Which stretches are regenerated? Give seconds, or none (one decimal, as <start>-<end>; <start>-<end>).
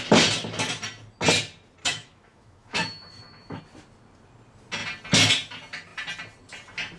1.8-3.6